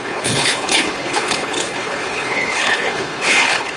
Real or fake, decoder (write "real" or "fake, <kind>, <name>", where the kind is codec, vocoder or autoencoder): fake, codec, HILCodec